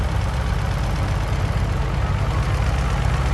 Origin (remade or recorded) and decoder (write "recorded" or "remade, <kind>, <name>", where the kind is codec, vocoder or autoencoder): recorded